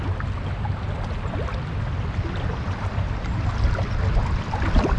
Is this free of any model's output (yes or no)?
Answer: yes